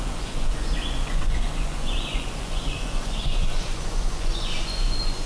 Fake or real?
fake